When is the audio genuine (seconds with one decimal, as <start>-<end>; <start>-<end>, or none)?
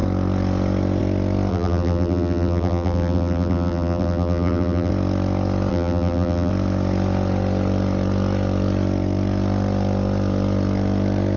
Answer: 0.0-1.5; 4.9-5.7; 6.5-11.4